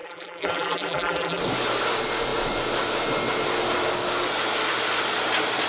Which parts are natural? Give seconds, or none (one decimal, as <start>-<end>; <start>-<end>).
1.4-5.7